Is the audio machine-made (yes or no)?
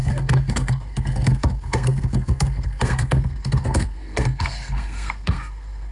yes